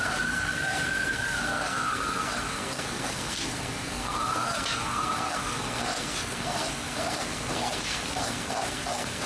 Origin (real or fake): fake